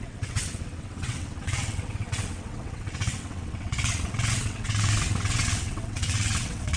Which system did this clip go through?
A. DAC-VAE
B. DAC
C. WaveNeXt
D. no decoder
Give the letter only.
C